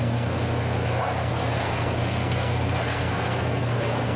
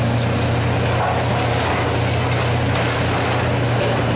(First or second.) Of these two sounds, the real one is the second